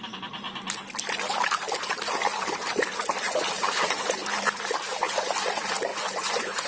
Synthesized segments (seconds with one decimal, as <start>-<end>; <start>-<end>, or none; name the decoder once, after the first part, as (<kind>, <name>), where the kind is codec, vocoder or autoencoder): 5.9-6.7 (vocoder, Vocos)